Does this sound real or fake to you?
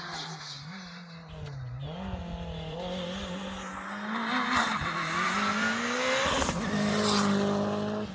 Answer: real